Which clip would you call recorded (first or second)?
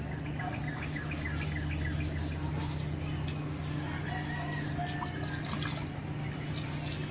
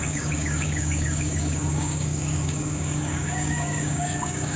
first